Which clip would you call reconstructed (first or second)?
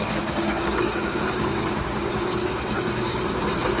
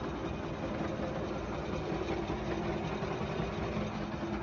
first